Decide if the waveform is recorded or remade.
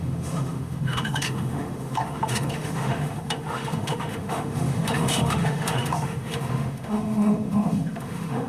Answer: remade